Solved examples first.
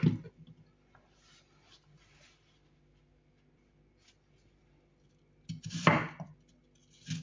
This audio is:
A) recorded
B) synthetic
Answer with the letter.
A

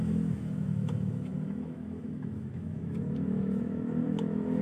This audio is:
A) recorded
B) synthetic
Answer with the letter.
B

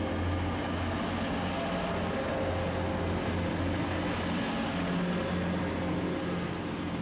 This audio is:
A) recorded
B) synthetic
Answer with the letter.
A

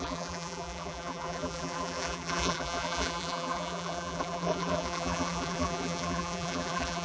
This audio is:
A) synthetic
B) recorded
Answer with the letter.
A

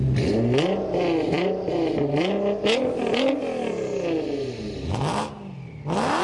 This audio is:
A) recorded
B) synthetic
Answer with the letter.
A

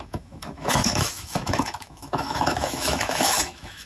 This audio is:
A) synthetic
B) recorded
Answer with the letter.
A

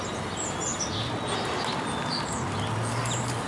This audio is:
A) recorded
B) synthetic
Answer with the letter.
A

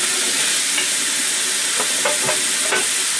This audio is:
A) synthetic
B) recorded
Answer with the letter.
B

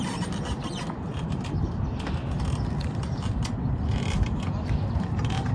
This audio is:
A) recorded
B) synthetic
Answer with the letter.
A